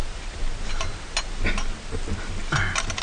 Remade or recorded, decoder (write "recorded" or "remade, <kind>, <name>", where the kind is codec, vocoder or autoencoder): recorded